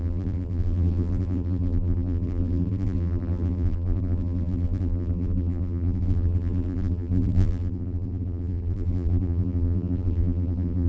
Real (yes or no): no